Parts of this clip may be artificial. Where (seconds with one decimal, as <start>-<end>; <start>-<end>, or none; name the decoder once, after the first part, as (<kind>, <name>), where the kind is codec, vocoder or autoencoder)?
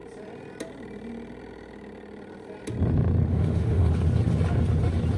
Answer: 3.3-3.9 (autoencoder, DAC-VAE)